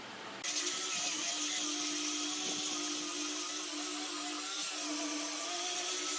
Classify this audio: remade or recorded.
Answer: recorded